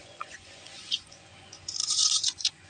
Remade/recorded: remade